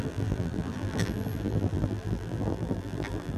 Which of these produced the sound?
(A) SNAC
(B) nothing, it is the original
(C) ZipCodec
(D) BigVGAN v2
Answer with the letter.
D